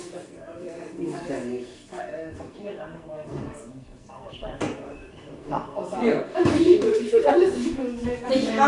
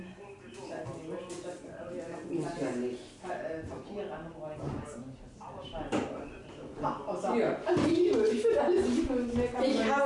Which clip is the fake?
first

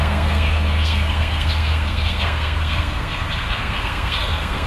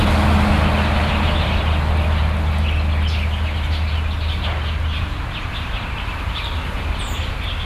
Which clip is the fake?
first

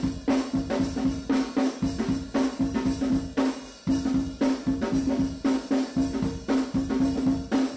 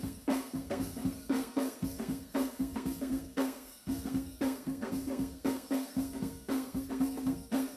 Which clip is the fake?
second